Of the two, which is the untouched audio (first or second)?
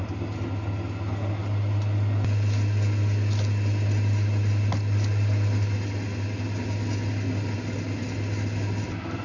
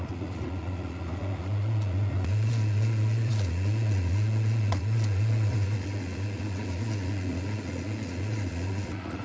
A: first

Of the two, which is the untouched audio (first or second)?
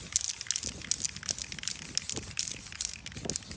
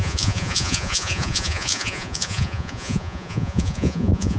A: first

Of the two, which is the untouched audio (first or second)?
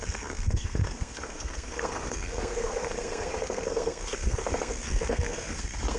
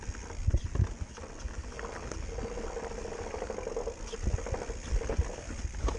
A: second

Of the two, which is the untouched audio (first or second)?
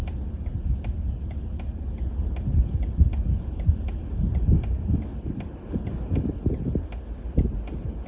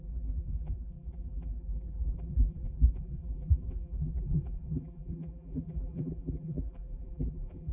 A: first